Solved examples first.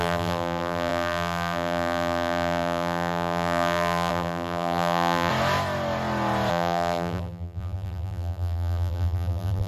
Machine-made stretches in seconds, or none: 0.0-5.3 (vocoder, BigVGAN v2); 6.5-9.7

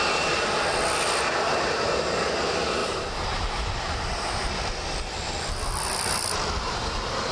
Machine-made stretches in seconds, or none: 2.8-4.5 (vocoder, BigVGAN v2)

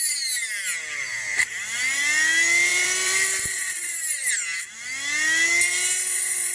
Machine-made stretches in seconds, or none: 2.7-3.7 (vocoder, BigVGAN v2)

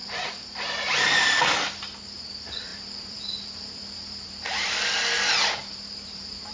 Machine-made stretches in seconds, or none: 0.0-6.5 (vocoder, BigVGAN v2)

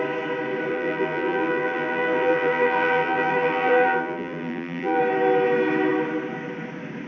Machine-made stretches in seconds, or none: 0.7-5.0 (vocoder, BigVGAN v2)

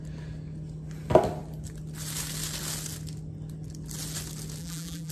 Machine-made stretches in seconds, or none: 4.6-5.1 (vocoder, BigVGAN v2)

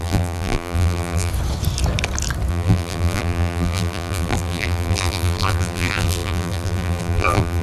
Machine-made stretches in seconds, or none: 0.0-1.3 (vocoder, BigVGAN v2); 2.5-7.6